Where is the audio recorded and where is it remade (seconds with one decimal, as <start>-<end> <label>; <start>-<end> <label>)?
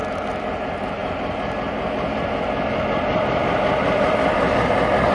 0.0-5.1 recorded